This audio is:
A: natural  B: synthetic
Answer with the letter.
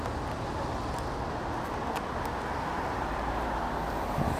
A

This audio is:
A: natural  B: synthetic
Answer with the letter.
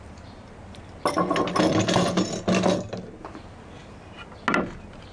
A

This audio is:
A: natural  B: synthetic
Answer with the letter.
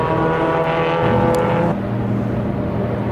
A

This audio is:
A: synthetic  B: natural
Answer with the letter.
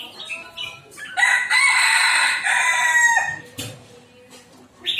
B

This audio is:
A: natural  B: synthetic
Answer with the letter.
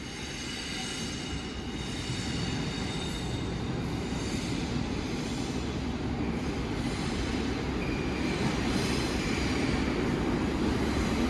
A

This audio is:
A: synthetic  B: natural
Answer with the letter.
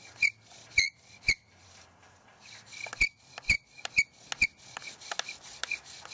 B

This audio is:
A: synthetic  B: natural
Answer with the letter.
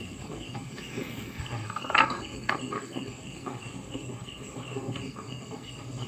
A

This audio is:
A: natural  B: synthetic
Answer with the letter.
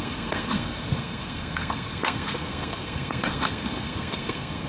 B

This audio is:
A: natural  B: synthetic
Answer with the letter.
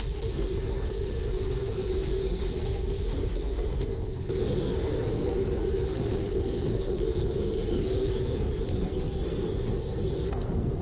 B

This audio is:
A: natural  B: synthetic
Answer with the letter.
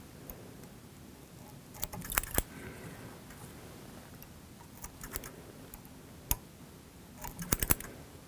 A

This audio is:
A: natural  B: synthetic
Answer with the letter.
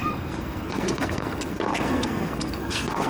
B